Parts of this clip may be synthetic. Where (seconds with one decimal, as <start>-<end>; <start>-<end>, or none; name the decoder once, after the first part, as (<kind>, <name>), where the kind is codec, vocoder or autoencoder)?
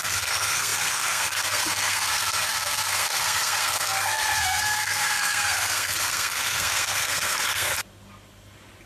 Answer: 0.0-7.7 (codec, SNAC)